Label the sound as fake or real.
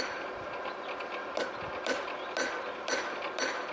real